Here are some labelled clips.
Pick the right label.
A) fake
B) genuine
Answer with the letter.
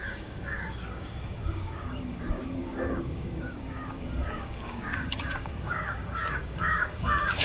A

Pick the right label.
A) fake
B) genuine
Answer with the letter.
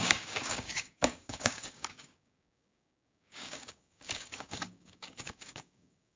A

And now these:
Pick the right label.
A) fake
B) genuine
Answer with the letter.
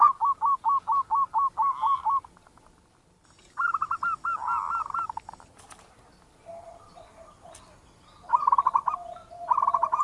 B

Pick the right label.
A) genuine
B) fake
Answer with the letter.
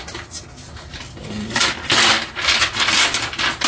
A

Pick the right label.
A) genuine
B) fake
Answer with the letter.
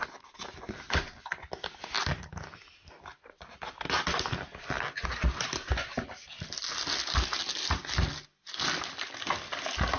A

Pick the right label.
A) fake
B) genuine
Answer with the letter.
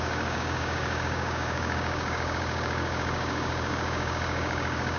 A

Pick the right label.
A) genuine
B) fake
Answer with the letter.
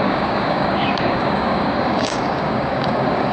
B